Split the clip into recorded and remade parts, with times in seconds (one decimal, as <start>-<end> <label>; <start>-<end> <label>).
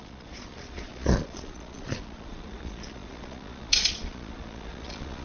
0.0-5.2 remade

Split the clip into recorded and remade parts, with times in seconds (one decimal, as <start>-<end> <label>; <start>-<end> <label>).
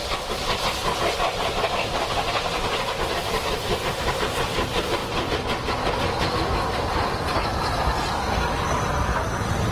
0.0-9.7 recorded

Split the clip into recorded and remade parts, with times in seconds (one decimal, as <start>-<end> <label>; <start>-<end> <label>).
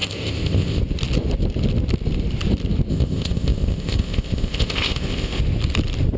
0.0-0.8 remade; 0.8-2.9 recorded; 2.9-5.4 remade; 5.4-6.2 recorded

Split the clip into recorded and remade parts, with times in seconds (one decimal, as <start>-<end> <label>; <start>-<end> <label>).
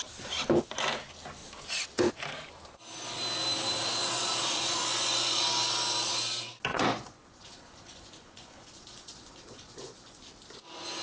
0.0-4.0 recorded; 4.0-5.4 remade; 5.4-6.7 recorded; 6.7-10.3 remade; 10.3-11.0 recorded